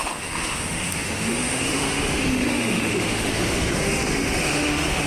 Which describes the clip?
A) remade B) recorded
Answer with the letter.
A